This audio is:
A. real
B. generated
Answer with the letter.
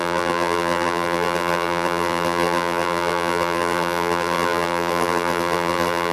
B